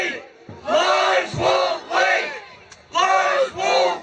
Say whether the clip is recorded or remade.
recorded